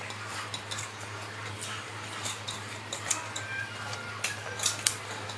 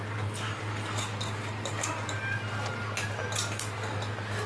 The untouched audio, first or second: second